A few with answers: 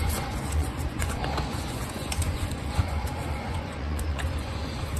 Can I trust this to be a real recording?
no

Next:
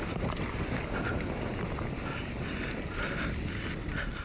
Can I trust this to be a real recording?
yes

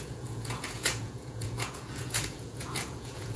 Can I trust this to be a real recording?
no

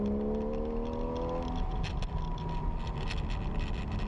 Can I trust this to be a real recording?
yes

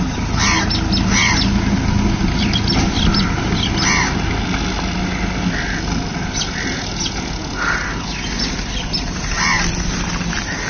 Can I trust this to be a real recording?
yes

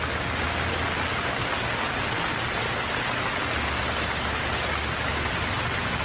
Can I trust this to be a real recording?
yes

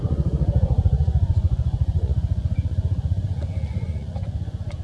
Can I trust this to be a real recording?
no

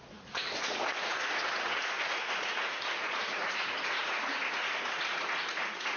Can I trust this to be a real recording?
no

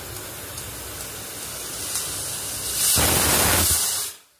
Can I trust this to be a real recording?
yes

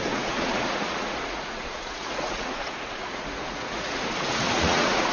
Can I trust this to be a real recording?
no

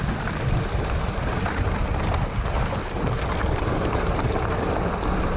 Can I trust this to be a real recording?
yes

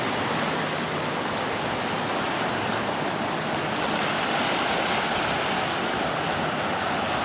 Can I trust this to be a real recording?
yes